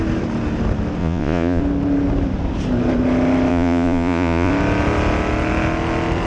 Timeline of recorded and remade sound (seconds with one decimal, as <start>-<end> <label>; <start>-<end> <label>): 0.0-1.0 recorded; 1.0-1.6 remade; 1.6-3.5 recorded; 3.5-4.5 remade; 4.5-6.3 recorded